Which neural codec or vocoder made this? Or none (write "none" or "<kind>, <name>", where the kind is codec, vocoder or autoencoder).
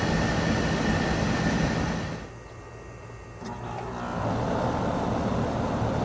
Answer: none